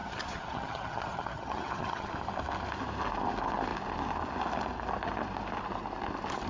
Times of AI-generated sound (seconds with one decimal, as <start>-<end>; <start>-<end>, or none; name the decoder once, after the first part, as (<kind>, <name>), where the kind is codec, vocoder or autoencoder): 0.0-2.1 (vocoder, HiFi-GAN)